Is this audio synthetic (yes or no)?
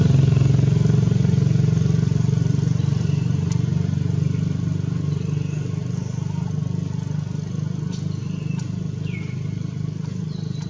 no